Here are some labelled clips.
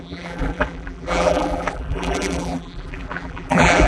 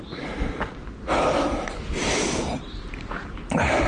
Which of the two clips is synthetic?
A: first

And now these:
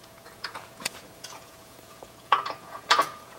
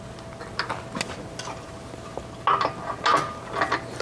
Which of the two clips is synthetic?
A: first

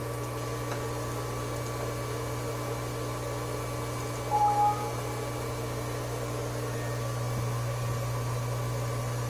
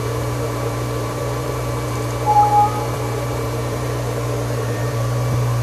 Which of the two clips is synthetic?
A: second